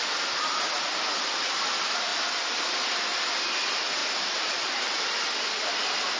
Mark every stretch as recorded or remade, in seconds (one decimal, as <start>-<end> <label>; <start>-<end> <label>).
0.0-4.0 recorded; 4.0-5.0 remade; 5.0-6.2 recorded

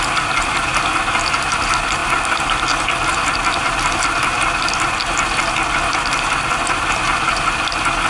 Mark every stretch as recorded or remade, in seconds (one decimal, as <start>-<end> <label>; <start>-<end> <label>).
0.0-8.1 recorded

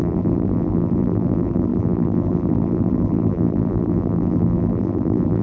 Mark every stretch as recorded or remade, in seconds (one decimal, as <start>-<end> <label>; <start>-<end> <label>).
0.0-5.4 remade

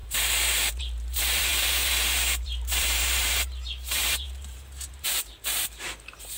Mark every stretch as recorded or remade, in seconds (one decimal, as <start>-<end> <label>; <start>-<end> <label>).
0.0-6.4 remade

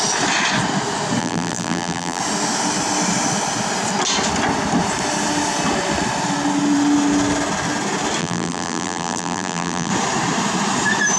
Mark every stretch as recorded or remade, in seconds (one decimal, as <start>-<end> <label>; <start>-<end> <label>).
0.0-1.2 recorded; 1.2-2.2 remade; 2.2-8.2 recorded; 8.2-9.9 remade; 9.9-11.2 recorded

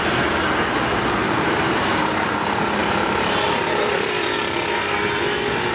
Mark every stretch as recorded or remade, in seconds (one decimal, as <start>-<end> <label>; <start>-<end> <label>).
0.0-1.2 recorded; 1.2-2.0 remade; 2.0-5.7 recorded